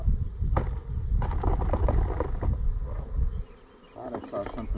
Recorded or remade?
recorded